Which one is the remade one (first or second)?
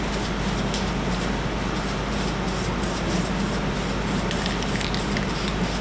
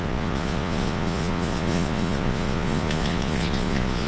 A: second